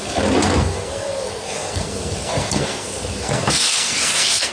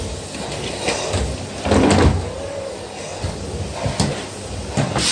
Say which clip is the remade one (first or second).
first